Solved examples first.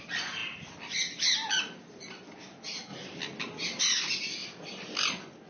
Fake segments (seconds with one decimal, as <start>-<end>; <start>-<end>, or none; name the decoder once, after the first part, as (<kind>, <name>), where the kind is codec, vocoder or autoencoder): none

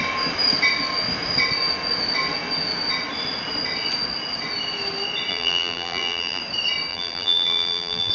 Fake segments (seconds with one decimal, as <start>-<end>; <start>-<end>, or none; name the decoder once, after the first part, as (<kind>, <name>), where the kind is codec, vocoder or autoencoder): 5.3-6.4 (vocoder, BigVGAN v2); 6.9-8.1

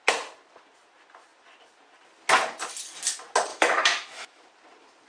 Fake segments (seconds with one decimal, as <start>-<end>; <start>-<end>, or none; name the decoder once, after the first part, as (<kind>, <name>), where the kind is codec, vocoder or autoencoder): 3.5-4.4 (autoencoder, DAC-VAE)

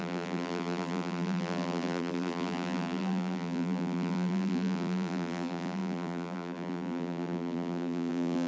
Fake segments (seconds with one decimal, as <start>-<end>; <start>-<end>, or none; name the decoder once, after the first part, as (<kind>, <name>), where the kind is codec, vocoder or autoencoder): 0.0-8.5 (vocoder, BigVGAN v2)

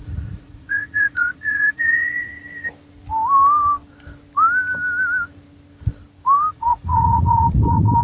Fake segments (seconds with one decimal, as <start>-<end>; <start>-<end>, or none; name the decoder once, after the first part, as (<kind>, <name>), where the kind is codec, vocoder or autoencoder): 0.0-2.3 (vocoder, Vocos); 6.5-8.0